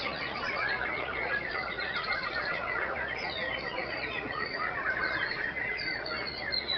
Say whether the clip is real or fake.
fake